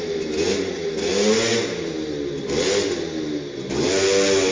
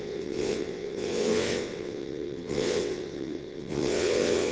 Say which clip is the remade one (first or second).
second